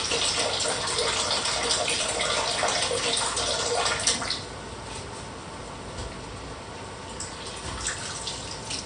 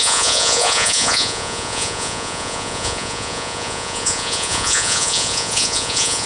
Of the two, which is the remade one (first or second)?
second